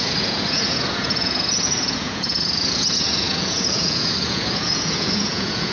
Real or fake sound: fake